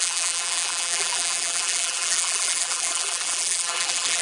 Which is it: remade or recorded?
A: remade